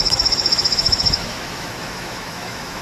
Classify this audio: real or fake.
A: fake